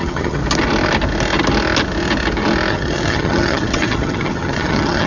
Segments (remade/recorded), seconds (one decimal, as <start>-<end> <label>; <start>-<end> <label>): 0.0-0.4 remade; 0.4-2.7 recorded; 2.7-5.1 remade